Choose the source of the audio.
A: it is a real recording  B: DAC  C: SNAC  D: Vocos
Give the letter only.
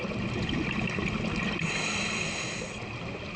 A